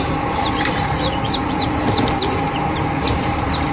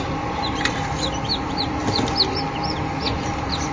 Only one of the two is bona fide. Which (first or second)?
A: second